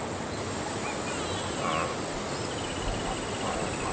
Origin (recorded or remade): recorded